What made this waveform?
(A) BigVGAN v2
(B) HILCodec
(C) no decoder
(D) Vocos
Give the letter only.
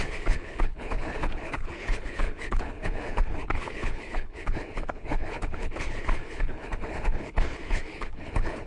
B